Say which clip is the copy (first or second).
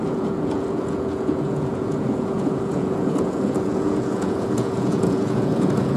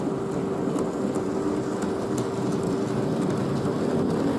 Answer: first